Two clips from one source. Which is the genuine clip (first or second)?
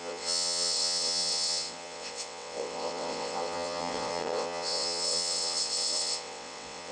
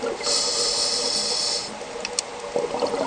second